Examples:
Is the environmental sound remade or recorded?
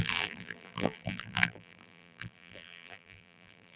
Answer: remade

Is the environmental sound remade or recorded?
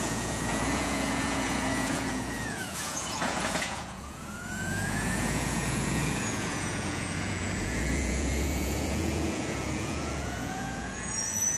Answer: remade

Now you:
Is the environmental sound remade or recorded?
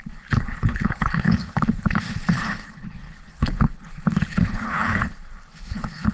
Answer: remade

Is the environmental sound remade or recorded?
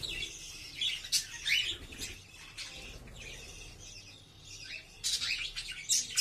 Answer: recorded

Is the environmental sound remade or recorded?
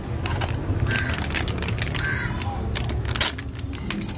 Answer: recorded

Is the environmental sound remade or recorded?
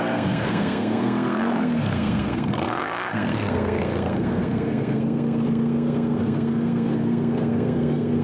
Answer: remade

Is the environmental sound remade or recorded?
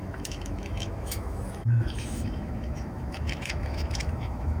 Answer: remade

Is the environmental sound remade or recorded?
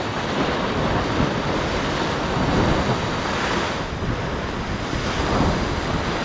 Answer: recorded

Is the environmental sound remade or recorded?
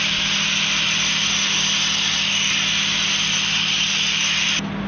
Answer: recorded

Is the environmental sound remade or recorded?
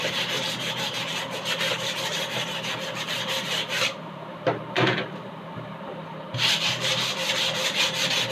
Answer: remade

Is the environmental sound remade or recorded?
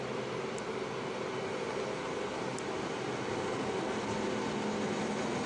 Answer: recorded